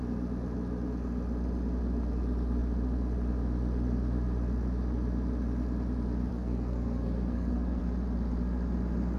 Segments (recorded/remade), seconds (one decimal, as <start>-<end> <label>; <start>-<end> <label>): 0.0-6.3 recorded; 6.3-7.8 remade; 7.8-9.2 recorded